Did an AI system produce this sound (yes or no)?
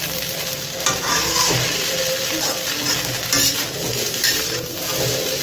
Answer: no